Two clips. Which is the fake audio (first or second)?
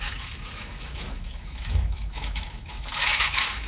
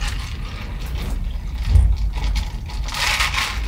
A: first